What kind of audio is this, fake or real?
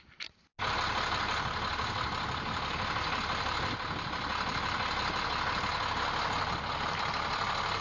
real